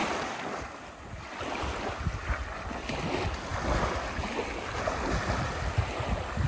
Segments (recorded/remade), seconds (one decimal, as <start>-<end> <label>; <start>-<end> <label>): 0.0-6.5 recorded